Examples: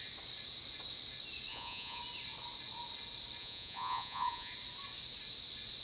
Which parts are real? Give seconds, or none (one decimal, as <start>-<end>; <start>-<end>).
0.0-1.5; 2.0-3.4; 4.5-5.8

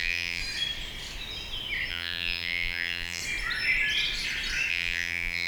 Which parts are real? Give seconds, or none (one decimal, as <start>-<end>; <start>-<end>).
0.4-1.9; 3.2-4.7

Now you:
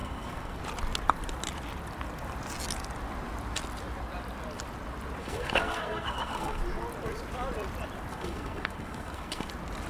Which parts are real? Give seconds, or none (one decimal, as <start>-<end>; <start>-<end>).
0.6-5.2; 6.6-8.1; 9.5-9.9

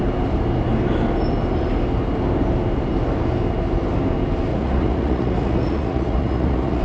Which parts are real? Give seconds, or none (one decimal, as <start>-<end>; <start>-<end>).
0.0-4.5